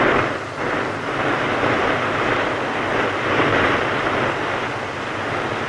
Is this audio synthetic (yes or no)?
no